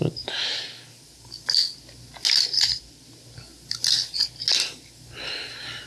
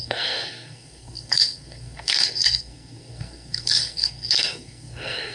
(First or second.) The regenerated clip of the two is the second